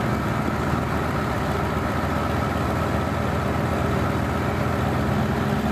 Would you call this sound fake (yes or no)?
no